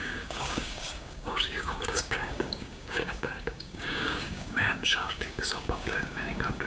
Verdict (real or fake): fake